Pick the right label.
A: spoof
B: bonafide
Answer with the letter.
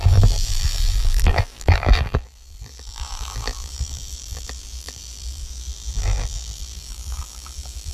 A